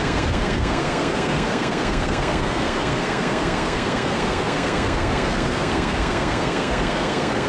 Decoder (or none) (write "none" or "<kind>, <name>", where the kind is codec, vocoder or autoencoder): codec, SNAC